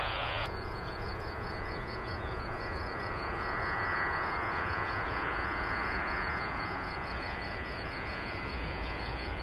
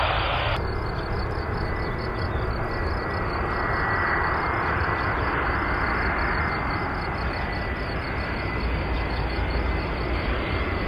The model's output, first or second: first